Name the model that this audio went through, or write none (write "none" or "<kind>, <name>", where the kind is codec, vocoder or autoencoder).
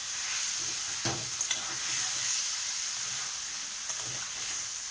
none